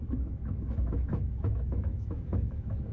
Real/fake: fake